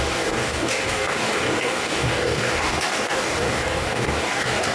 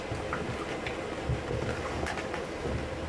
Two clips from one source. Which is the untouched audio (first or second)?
second